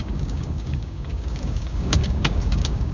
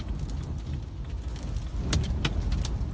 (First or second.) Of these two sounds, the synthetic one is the first